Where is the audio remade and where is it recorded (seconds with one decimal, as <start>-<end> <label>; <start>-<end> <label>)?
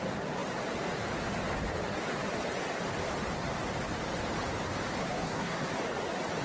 0.0-5.0 recorded; 5.0-5.7 remade; 5.7-6.4 recorded